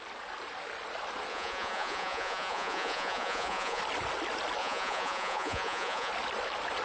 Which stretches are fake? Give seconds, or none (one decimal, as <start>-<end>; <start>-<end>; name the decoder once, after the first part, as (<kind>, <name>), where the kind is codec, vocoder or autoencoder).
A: 1.3-3.8 (vocoder, Vocos); 4.6-6.1

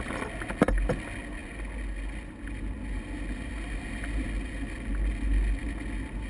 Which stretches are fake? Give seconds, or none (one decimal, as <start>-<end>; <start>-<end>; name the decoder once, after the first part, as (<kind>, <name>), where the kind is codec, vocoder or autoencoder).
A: none